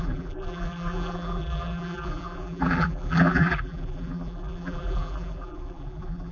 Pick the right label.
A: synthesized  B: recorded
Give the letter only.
A